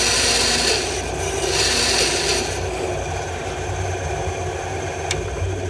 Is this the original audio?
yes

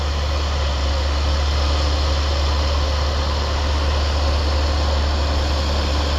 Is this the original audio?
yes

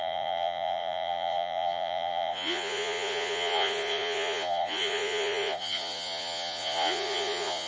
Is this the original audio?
no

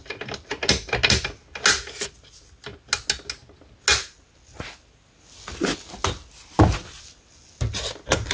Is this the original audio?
yes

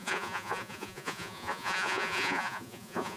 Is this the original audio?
no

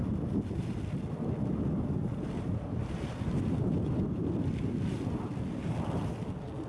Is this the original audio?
yes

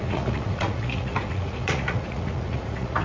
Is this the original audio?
no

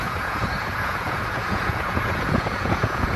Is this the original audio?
no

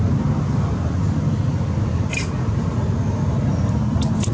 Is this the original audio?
yes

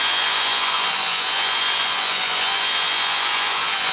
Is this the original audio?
no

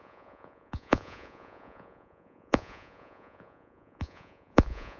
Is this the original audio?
no